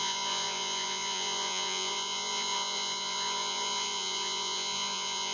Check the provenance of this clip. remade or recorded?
remade